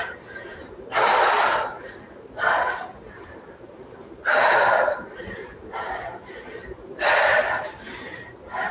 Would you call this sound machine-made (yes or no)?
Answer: yes